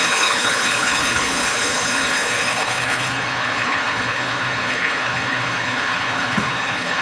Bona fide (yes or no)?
no